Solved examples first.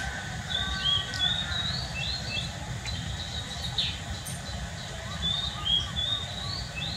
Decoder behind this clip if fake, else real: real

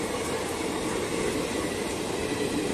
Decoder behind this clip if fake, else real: real